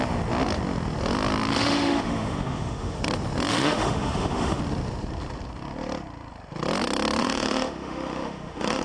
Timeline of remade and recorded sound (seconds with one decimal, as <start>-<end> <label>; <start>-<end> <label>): 0.0-1.5 recorded; 1.5-3.0 remade; 3.0-3.5 recorded; 3.5-4.6 remade; 4.6-7.2 recorded; 7.2-8.8 remade